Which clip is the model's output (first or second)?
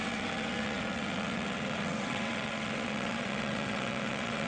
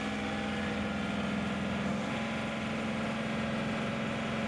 first